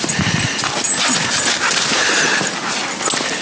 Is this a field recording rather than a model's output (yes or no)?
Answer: yes